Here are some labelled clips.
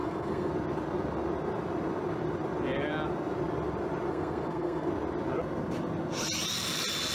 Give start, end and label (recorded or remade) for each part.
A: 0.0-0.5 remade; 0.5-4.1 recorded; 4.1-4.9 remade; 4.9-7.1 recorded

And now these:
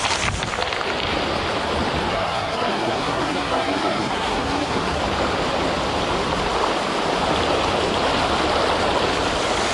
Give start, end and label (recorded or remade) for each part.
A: 0.0-2.1 recorded; 2.1-5.0 remade; 5.0-9.7 recorded

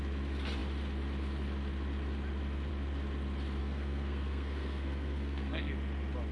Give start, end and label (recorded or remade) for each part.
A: 0.0-3.6 recorded; 3.6-5.7 remade; 5.7-6.3 recorded